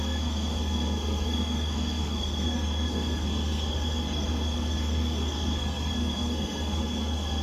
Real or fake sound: fake